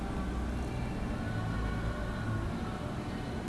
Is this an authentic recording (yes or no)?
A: yes